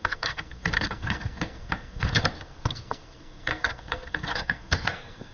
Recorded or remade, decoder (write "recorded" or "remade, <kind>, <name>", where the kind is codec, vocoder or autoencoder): remade, codec, SNAC